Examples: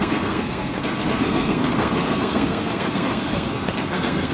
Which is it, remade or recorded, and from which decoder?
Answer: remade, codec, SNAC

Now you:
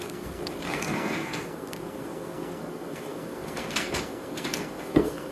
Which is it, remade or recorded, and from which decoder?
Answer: remade, codec, SNAC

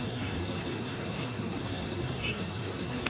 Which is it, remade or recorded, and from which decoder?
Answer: remade, codec, SNAC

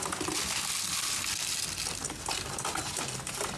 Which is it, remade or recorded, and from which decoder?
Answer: recorded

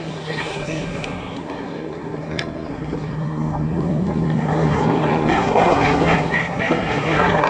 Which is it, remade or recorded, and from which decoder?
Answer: remade, codec, SNAC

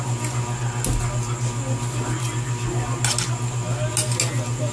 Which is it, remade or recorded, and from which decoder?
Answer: recorded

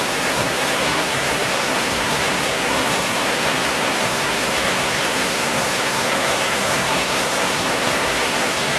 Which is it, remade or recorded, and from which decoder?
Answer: remade, codec, SNAC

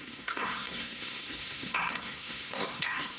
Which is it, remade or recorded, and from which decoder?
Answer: remade, codec, SNAC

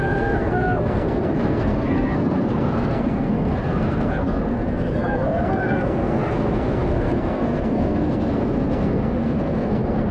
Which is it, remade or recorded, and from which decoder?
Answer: remade, codec, SNAC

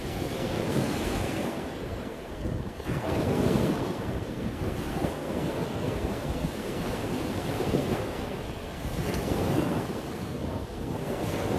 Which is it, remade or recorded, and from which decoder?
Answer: remade, codec, SNAC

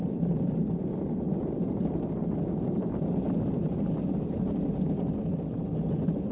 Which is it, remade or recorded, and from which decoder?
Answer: recorded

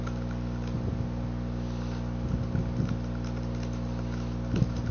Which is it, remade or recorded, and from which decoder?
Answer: recorded